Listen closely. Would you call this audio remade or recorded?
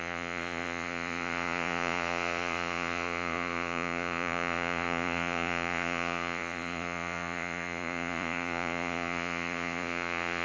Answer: remade